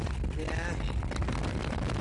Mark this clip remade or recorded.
recorded